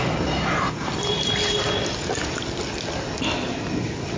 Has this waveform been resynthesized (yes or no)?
no